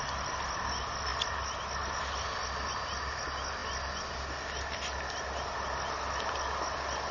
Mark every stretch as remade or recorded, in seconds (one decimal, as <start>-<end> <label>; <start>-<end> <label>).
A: 0.0-7.1 recorded